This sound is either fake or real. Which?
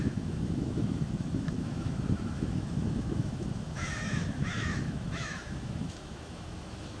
fake